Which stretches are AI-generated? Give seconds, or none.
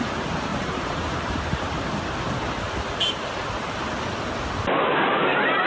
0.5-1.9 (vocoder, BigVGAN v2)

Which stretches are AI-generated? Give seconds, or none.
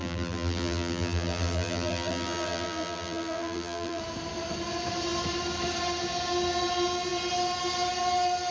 0.0-4.0 (vocoder, BigVGAN v2)